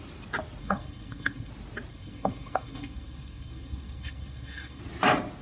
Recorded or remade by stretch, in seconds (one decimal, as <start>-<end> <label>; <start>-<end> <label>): 0.0-0.6 recorded; 0.6-1.5 remade; 1.5-1.9 recorded; 1.9-4.8 remade; 4.8-5.4 recorded